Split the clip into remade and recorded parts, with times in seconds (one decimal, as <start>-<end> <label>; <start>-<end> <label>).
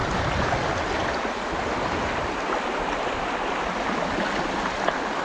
0.0-5.2 recorded